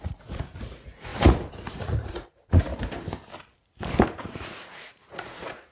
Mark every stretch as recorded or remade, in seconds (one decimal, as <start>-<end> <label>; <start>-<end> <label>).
0.0-2.7 remade; 2.7-4.2 recorded; 4.2-5.7 remade